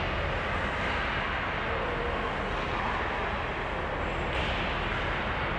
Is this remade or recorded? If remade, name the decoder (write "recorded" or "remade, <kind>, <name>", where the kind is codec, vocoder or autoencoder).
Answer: recorded